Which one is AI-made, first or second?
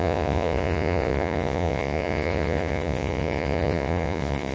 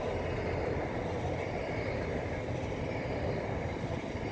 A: first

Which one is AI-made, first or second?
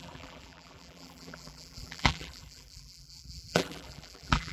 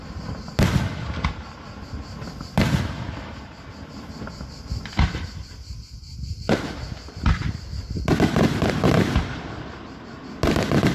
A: first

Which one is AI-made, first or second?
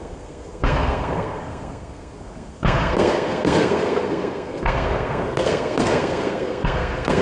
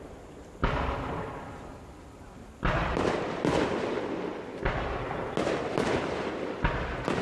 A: first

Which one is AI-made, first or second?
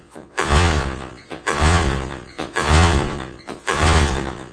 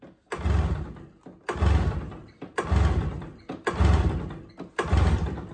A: first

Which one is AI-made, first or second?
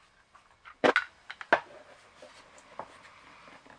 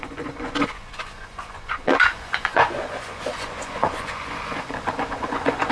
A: second